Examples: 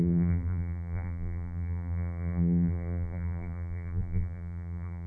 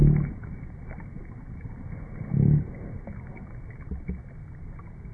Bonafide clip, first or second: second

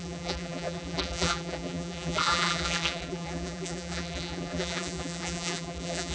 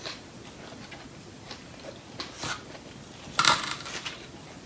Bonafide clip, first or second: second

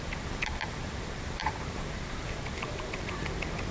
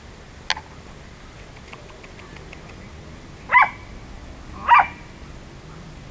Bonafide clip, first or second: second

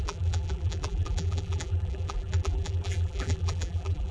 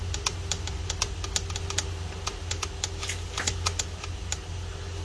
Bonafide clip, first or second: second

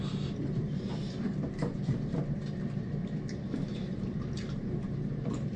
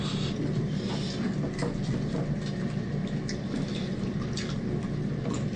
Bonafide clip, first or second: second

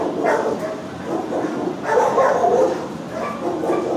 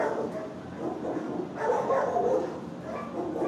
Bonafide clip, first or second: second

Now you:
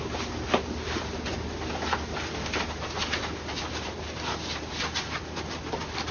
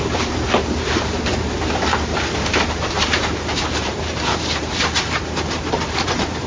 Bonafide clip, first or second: first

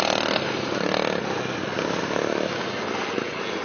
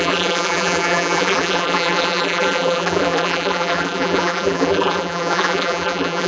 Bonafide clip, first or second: first